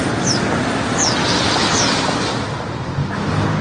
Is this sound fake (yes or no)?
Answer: no